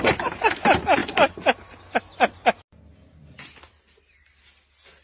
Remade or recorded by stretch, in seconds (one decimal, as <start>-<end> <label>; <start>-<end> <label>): 0.0-5.0 recorded